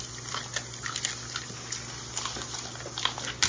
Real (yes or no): yes